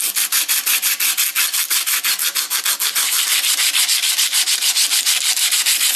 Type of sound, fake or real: real